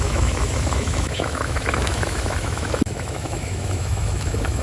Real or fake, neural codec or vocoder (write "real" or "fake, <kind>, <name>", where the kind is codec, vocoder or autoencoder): fake, autoencoder, DAC-VAE